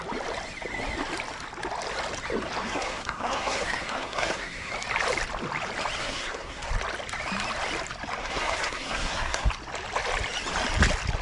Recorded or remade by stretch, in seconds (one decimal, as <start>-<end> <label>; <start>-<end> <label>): 0.0-2.6 recorded; 2.6-4.7 remade; 4.7-6.0 recorded; 6.0-6.7 remade; 6.7-8.2 recorded; 8.2-9.5 remade; 9.5-11.2 recorded